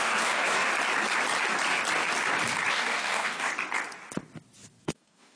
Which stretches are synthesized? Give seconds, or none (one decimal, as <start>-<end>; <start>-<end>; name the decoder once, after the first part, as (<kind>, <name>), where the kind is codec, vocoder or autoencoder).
0.0-0.7 (codec, DAC); 2.7-3.5; 4.8-5.4